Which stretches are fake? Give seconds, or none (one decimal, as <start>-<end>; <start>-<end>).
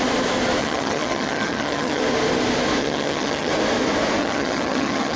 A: 0.6-2.0; 2.8-3.5; 4.2-5.2